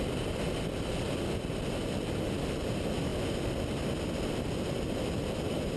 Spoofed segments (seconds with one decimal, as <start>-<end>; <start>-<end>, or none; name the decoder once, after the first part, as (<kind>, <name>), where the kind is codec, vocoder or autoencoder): none